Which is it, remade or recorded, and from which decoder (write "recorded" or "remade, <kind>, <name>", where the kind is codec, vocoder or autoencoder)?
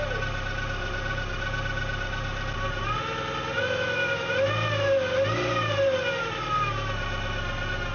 recorded